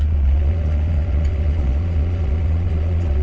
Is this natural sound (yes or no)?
no